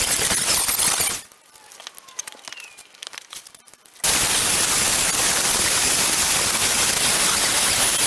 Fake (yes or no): no